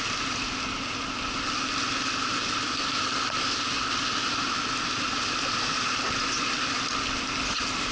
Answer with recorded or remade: recorded